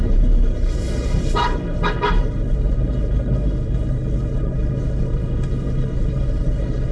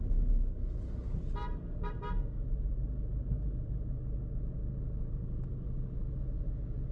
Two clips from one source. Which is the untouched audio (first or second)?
second